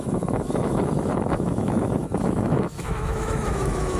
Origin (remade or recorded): remade